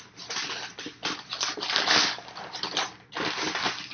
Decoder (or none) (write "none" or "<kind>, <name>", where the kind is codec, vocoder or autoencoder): none